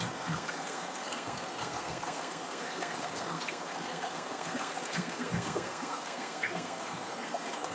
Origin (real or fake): fake